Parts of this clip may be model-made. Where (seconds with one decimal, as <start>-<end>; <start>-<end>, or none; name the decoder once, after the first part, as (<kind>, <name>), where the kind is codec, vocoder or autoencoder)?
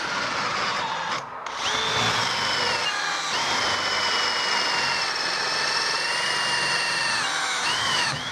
7.4-8.3 (autoencoder, DAC-VAE)